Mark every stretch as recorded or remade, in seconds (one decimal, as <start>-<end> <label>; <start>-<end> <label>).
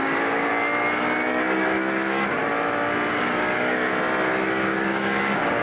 0.0-0.5 remade; 0.5-1.3 recorded; 1.3-2.4 remade; 2.4-3.1 recorded; 3.1-3.9 remade; 3.9-4.5 recorded; 4.5-5.6 remade